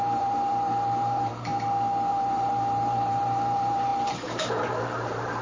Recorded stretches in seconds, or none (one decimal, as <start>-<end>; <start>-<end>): 1.5-2.1